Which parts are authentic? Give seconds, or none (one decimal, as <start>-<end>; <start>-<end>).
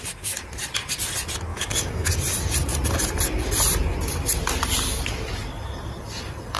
0.0-1.5; 2.1-6.6